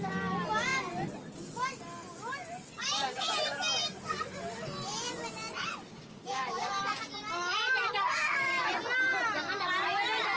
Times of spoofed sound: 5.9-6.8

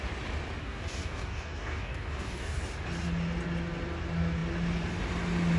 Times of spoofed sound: 0.6-2.6

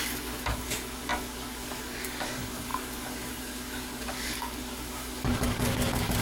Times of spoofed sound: 0.0-6.2